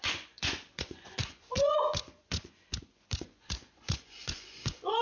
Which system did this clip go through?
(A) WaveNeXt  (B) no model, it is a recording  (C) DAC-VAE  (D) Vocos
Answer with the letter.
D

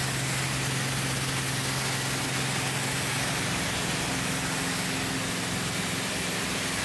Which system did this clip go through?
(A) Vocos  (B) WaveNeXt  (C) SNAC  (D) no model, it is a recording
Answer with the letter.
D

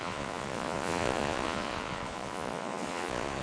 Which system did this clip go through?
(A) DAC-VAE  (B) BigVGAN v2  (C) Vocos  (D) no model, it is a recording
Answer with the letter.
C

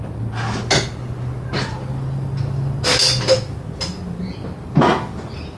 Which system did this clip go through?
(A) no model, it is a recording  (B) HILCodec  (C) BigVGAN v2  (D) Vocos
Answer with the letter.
A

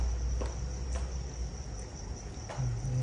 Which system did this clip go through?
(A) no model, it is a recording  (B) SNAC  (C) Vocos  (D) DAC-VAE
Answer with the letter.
A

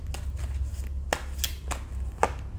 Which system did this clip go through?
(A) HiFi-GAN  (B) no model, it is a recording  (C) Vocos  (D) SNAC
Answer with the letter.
B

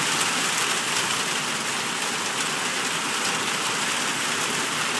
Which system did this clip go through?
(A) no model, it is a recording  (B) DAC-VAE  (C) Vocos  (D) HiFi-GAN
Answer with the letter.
A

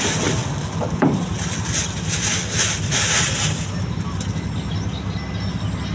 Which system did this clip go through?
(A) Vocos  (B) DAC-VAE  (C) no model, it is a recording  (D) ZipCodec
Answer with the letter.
C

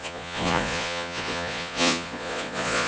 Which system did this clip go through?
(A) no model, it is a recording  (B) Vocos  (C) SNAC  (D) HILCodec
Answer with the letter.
B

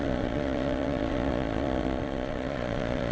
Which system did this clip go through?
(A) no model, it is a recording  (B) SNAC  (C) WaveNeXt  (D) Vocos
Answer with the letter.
D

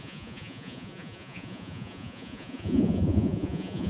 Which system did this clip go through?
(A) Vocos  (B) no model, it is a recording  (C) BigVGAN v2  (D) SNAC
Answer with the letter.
A